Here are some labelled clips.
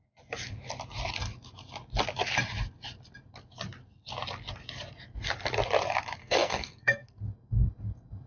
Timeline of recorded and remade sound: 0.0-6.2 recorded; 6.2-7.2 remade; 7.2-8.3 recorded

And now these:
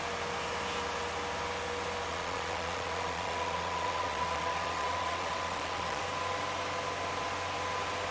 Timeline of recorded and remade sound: 0.0-2.1 recorded; 2.1-6.0 remade; 6.0-8.1 recorded

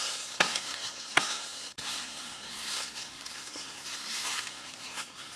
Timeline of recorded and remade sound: 0.0-5.4 remade